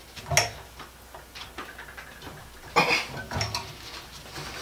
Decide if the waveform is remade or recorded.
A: recorded